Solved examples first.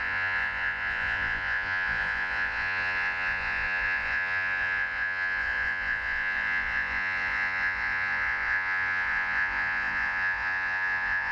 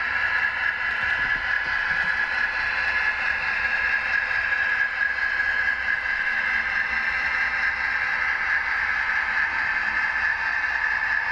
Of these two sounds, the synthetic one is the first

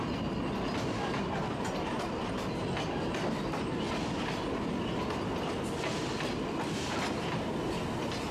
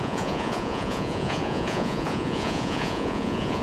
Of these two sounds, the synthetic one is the second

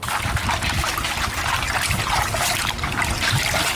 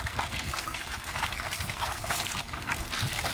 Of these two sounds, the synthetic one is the second